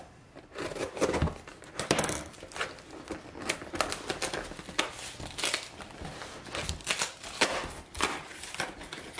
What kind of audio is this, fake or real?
real